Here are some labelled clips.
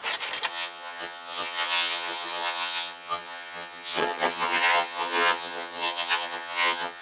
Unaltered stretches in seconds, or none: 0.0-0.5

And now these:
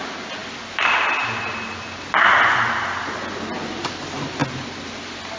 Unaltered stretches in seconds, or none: 0.0-5.4

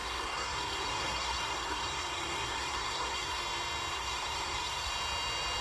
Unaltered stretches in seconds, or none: 3.4-3.9; 4.9-5.6

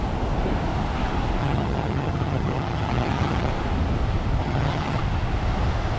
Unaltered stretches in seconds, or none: 0.0-1.4; 3.5-4.4; 5.0-6.0